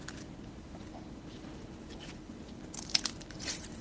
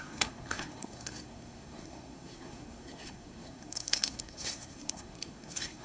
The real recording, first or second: first